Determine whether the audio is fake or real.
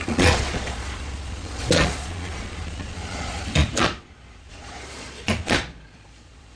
fake